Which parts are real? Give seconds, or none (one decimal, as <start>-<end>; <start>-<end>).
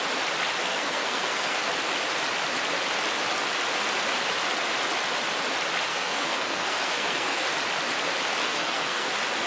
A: 0.0-0.6; 1.7-5.9; 7.5-8.4; 9.1-9.5